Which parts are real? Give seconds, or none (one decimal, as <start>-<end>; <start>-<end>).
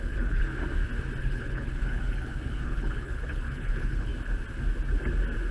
0.5-1.2; 4.1-5.5